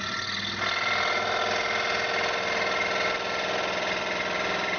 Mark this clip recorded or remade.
recorded